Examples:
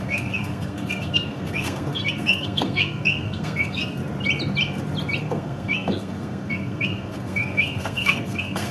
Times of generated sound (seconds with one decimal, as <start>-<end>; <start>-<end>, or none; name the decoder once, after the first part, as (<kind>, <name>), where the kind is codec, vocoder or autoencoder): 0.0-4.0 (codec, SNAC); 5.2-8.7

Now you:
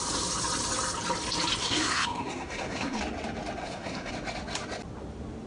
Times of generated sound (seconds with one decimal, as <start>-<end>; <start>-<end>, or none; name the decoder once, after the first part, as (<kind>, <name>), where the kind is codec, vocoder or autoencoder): 1.6-3.0 (codec, SNAC); 3.6-4.1

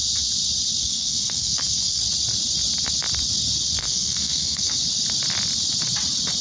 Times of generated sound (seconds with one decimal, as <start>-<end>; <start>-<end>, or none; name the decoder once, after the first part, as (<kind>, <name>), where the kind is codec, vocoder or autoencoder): 0.8-2.0 (codec, SNAC); 3.8-4.8

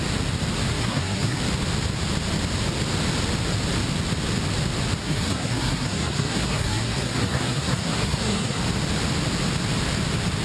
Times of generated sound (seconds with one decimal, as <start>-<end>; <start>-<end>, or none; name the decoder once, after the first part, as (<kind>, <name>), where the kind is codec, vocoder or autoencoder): 0.7-1.4 (codec, SNAC); 5.0-8.6